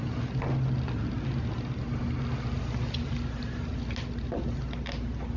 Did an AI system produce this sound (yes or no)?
no